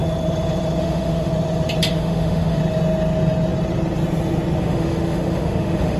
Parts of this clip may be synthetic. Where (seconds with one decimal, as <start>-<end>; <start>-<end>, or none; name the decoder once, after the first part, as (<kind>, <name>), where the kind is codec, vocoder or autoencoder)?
0.8-1.3 (autoencoder, DAC-VAE); 1.9-2.6; 4.6-6.0